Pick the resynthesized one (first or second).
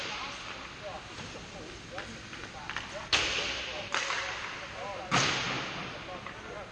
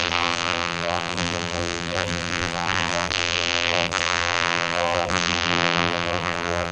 second